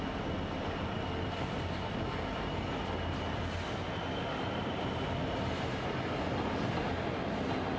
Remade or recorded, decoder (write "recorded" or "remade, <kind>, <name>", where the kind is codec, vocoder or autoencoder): recorded